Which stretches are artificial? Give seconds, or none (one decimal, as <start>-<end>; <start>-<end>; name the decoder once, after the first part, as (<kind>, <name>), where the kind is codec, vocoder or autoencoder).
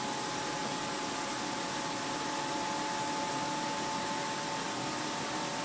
none